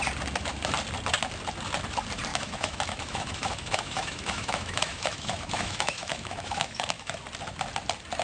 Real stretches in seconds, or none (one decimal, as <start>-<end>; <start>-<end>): 0.0-2.3; 7.2-8.2